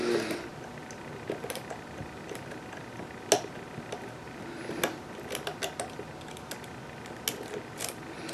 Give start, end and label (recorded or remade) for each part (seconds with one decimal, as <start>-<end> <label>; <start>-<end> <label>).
0.0-8.3 recorded